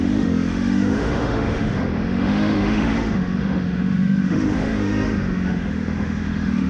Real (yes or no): no